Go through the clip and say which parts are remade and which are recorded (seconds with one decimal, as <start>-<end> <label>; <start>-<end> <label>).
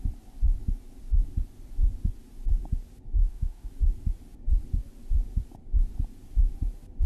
0.0-3.2 recorded; 3.2-3.7 remade; 3.7-7.1 recorded